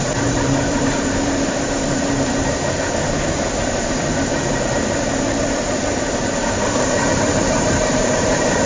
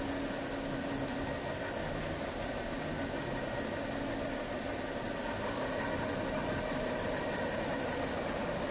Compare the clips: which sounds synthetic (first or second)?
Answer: first